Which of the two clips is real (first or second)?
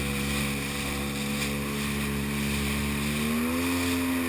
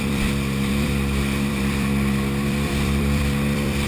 first